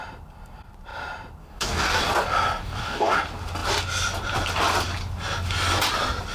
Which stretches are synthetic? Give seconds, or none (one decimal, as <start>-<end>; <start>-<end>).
1.4-2.0; 2.6-3.2